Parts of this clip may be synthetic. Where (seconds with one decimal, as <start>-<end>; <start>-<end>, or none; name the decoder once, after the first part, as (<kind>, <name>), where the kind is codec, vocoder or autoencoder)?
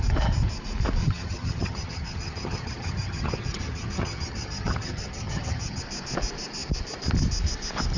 1.0-5.8 (vocoder, HiFi-GAN)